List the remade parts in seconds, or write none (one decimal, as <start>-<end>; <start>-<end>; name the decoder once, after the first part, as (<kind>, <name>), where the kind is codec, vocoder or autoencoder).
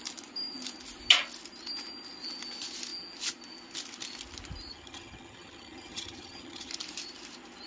4.7-6.7 (vocoder, HiFi-GAN)